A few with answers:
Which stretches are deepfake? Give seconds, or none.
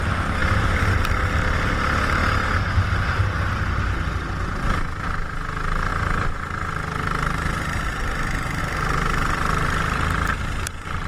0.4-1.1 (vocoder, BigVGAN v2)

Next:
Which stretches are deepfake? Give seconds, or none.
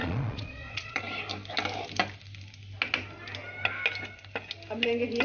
0.0-1.0 (vocoder, Vocos)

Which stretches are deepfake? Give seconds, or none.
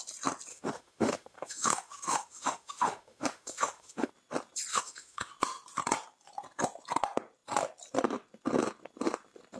0.5-4.1 (autoencoder, DAC-VAE); 4.7-5.3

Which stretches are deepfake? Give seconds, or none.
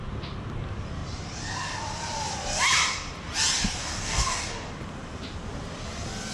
3.8-4.7 (codec, DAC)